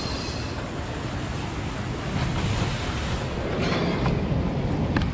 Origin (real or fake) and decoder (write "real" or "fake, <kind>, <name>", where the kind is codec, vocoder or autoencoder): real